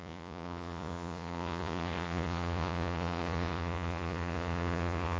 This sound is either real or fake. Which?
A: fake